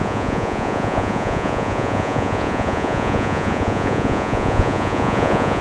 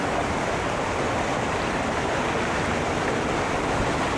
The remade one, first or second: first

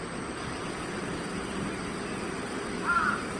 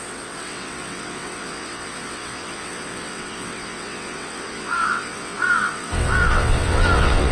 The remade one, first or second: second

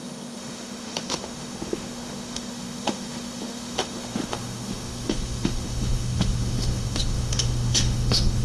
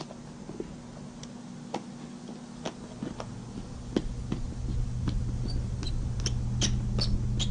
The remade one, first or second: first